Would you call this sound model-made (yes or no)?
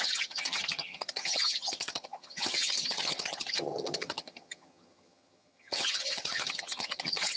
yes